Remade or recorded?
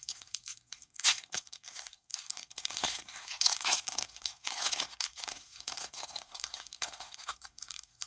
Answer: remade